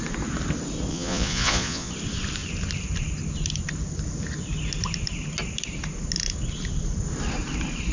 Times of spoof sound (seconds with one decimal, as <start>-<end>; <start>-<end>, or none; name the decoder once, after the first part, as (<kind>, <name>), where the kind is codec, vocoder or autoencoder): 0.9-1.9 (vocoder, Vocos)